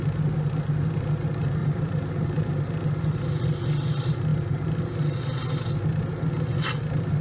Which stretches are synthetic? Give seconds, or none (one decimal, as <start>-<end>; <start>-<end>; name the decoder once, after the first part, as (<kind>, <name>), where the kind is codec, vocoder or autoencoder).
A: 1.6-2.6 (vocoder, BigVGAN v2)